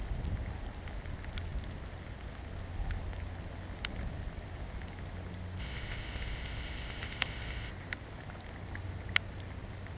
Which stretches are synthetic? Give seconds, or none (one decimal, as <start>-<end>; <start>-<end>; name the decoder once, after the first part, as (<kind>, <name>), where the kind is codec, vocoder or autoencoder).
5.6-7.7 (codec, ZipCodec)